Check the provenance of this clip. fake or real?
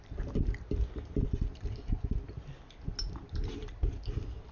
real